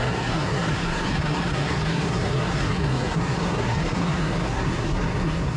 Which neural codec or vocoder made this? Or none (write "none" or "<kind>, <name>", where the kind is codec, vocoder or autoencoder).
codec, SNAC